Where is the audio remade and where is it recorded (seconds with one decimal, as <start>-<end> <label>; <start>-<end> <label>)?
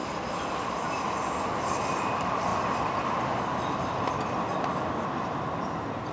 0.0-6.1 recorded